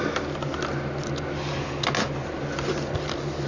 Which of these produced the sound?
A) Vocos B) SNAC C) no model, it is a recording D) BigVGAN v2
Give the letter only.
C